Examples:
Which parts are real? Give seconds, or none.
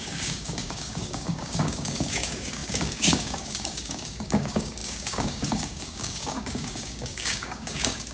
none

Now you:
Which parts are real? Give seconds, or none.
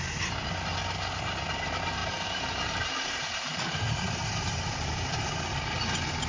0.0-2.0; 5.8-6.3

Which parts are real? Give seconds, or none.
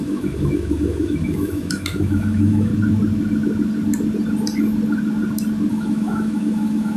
2.7-5.7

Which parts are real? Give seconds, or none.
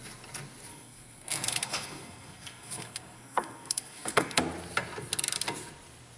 0.0-0.7; 4.4-6.2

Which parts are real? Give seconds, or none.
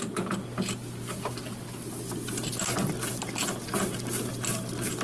0.0-5.0